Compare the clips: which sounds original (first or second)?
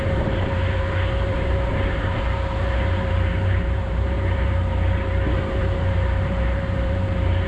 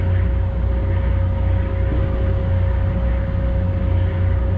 second